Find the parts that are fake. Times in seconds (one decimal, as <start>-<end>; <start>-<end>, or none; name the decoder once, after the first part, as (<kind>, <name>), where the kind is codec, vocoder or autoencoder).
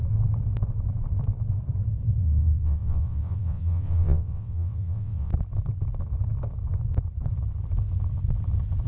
2.2-5.3 (vocoder, WaveNeXt)